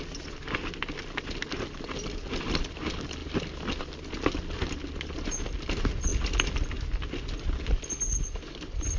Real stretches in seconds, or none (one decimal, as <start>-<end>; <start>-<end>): 0.0-9.0

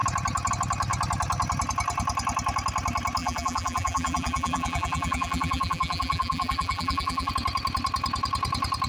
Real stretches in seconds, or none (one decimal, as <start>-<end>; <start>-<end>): 0.0-3.2; 7.3-8.9

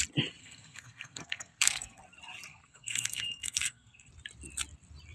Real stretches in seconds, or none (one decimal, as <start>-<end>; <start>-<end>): 0.0-0.4; 2.0-2.5; 4.1-5.1

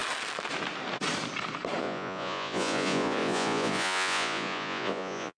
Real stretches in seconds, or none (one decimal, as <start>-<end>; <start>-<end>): 0.0-1.8

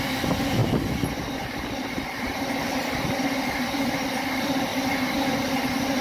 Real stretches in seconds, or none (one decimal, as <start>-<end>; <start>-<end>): 4.7-5.2

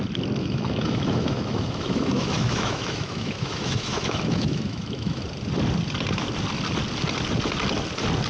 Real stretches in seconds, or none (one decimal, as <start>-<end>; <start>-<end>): 0.0-0.4; 5.2-8.3